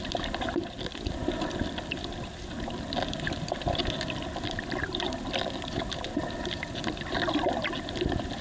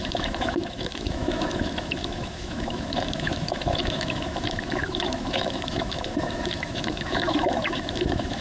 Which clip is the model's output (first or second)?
second